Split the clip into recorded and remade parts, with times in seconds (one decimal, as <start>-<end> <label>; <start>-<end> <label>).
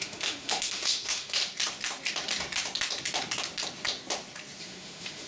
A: 0.0-1.4 remade; 1.4-4.6 recorded; 4.6-5.3 remade